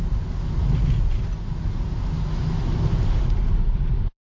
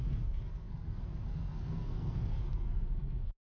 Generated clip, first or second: second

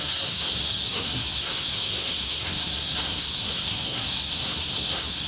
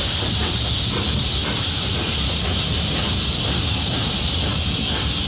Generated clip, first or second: first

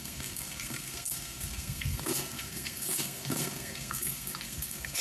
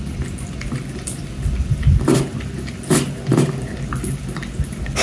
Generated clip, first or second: first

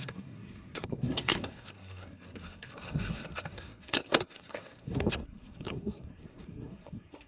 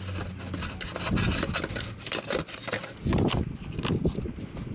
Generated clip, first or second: first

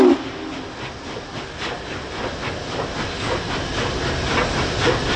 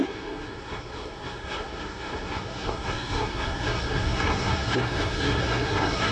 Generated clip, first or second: second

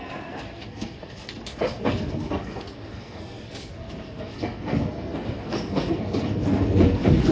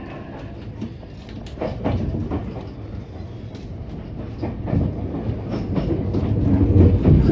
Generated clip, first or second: first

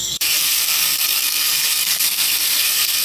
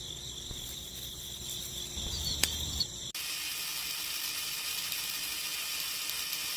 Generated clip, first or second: first